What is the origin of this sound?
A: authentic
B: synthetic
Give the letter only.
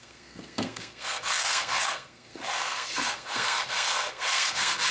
B